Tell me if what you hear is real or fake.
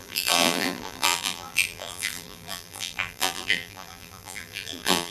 fake